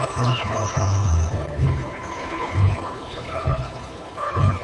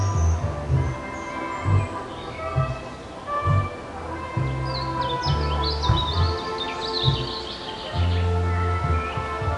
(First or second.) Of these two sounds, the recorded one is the second